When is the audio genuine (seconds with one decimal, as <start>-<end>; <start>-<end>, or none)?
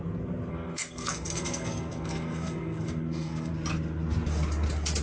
0.0-0.5; 3.5-5.0